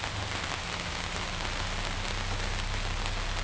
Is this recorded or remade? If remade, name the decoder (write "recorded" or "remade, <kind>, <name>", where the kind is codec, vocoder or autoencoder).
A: recorded